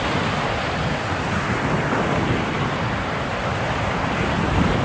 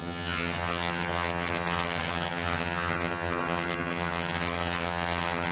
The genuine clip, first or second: first